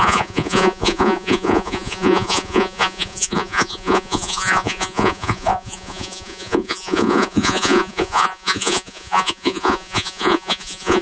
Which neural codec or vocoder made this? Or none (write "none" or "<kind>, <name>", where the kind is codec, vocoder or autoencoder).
vocoder, Vocos